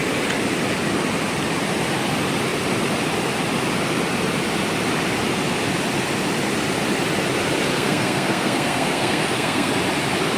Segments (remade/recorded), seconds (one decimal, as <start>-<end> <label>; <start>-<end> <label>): 0.0-7.7 recorded; 7.7-9.7 remade; 9.7-10.4 recorded